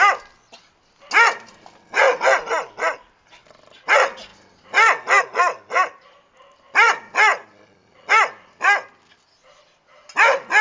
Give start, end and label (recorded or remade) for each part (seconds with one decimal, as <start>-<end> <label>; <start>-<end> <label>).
0.0-10.6 recorded